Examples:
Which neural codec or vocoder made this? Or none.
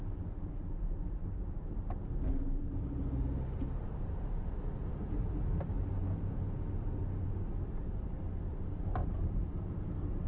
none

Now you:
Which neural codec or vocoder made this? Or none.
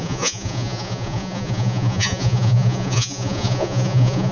vocoder, Vocos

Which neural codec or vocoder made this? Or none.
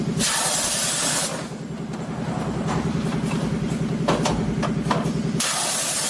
none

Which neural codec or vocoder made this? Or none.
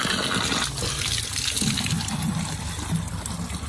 none